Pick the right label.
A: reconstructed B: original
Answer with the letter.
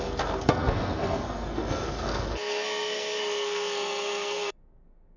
A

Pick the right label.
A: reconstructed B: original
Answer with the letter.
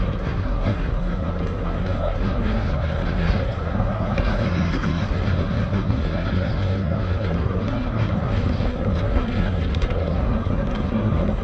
A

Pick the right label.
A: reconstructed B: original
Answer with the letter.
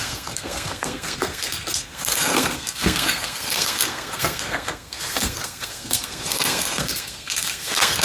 A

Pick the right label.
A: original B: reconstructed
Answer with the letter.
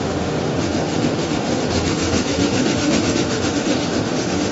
B